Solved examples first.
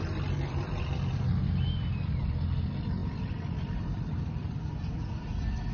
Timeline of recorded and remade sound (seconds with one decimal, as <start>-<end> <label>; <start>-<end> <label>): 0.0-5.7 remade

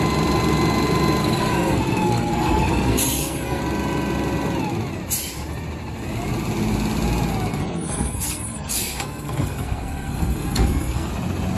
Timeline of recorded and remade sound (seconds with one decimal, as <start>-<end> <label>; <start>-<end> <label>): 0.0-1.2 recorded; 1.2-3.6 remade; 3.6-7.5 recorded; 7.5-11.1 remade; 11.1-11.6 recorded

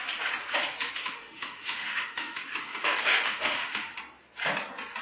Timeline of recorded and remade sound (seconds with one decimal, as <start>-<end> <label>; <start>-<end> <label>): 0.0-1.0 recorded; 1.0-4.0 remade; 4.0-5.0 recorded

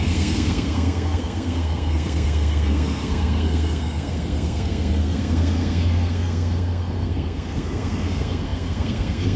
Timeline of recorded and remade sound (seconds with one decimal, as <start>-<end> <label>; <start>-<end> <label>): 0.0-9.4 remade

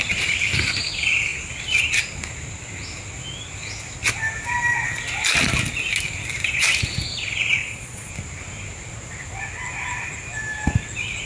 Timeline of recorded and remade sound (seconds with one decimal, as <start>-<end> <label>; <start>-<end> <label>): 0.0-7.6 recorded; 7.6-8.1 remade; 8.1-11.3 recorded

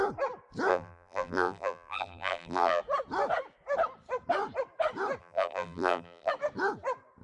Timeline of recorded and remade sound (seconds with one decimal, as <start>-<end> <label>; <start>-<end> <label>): 0.0-0.7 recorded; 0.7-2.8 remade; 2.8-5.2 recorded; 5.2-6.3 remade; 6.3-7.2 recorded

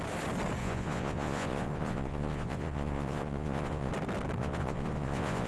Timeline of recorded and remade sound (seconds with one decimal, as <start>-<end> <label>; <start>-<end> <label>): 0.0-0.6 recorded; 0.6-3.9 remade; 3.9-4.4 recorded; 4.4-5.5 remade

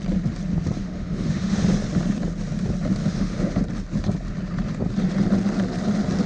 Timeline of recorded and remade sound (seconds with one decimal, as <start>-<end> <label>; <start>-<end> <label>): 0.0-0.8 recorded; 0.8-1.6 remade; 1.6-3.0 recorded; 3.0-3.6 remade; 3.6-6.3 recorded